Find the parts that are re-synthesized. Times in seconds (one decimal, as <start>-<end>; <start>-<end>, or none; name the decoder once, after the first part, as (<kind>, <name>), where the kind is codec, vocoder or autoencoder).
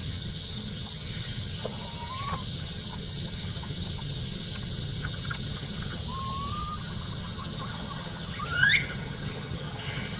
0.0-6.0 (vocoder, HiFi-GAN); 6.5-10.2